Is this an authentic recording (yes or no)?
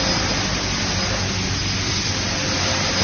yes